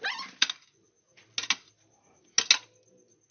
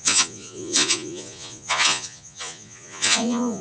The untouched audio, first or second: first